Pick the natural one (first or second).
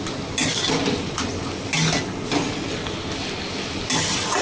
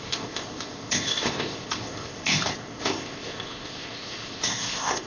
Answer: first